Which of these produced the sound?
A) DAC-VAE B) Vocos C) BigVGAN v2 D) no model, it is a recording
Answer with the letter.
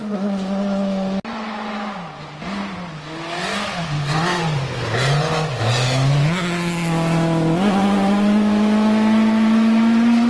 D